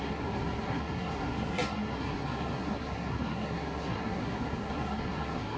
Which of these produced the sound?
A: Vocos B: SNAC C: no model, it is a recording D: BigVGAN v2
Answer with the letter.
B